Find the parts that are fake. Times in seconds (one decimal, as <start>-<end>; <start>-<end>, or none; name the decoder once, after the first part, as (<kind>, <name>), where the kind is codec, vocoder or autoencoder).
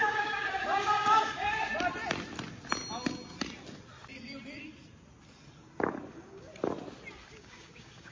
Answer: 0.0-1.7 (codec, DAC); 6.1-6.5; 7.3-8.1